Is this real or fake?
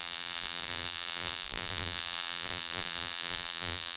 fake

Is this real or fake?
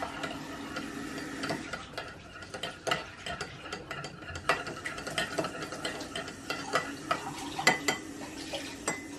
real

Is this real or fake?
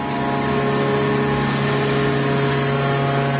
real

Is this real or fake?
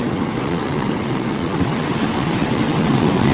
fake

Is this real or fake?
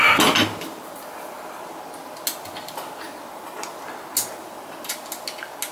real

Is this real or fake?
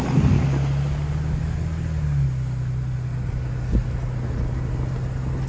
real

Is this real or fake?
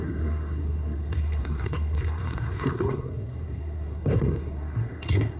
fake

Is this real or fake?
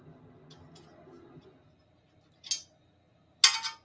real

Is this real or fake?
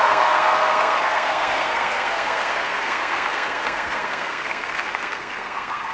fake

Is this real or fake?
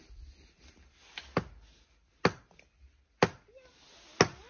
real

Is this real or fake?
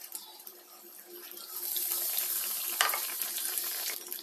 fake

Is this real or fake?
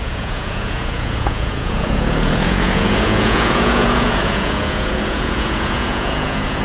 fake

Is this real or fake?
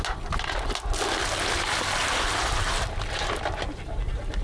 real